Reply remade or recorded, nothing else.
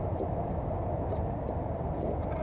recorded